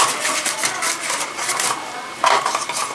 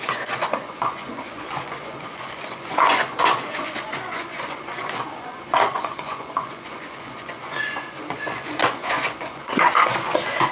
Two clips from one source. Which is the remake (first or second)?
second